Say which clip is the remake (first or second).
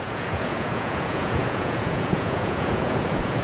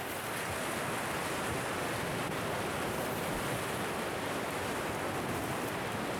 first